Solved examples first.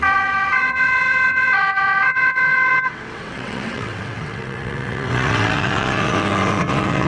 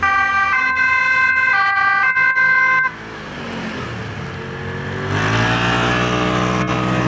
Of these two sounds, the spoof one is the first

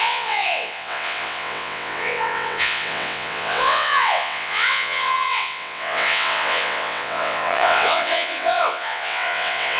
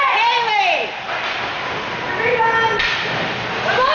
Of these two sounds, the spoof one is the first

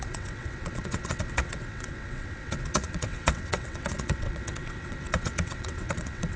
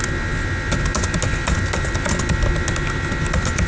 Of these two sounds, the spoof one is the first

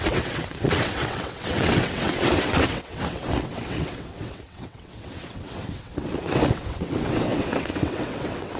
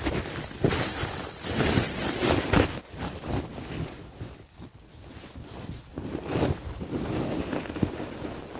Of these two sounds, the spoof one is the first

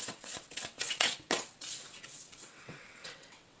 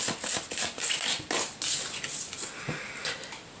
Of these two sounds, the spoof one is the first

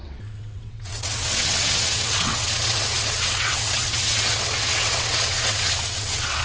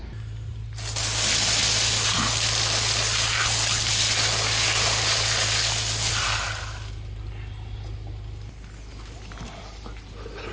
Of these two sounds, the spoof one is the first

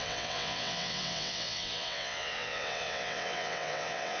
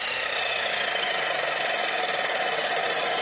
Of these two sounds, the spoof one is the first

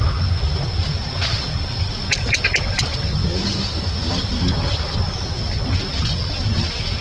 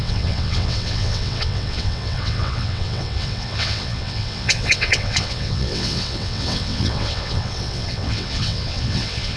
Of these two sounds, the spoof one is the second